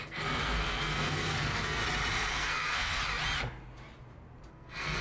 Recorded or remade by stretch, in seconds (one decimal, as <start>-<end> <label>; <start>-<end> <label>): 0.0-1.8 remade; 1.8-2.3 recorded; 2.3-3.0 remade; 3.0-4.5 recorded; 4.5-5.0 remade